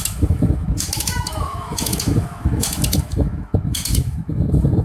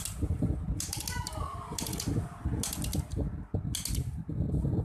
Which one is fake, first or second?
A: first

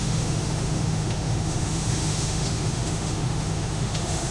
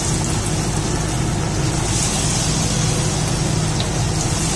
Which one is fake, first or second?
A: first